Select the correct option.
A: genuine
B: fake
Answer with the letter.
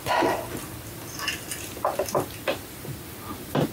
A